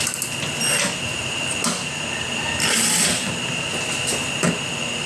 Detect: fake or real real